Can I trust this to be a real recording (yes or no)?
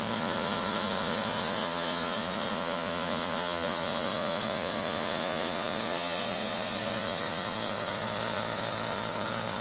no